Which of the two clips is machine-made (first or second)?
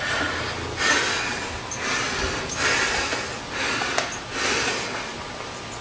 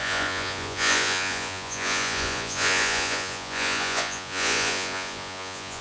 second